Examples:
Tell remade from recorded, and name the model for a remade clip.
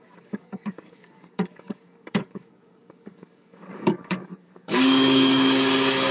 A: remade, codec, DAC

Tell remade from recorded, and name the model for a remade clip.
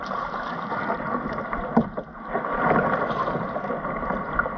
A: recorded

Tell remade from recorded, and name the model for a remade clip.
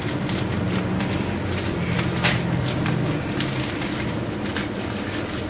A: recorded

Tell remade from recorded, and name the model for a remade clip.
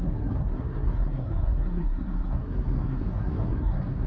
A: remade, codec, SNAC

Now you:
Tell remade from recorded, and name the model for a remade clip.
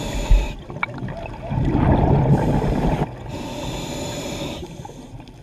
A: recorded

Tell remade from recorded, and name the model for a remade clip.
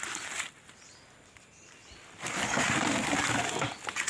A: recorded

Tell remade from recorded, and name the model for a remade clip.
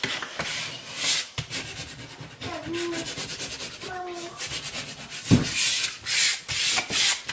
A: recorded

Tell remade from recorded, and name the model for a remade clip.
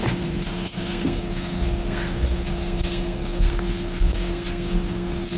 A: remade, codec, SNAC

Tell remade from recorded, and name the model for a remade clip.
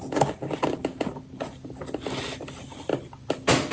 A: recorded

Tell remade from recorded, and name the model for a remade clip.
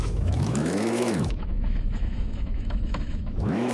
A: remade, autoencoder, DAC-VAE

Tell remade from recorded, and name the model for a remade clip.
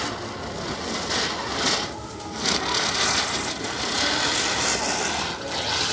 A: recorded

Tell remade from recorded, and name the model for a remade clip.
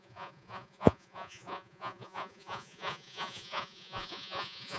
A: remade, vocoder, Vocos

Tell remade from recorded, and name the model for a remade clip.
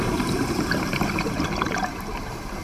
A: remade, vocoder, BigVGAN v2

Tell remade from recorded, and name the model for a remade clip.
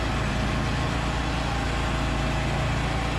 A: recorded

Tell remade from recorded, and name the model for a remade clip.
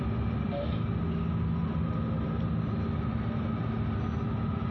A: recorded